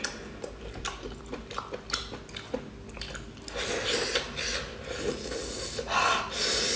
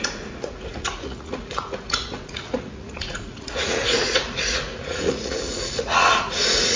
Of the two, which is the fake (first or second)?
second